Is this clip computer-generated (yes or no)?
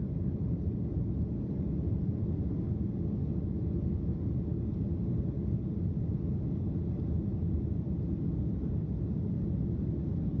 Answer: no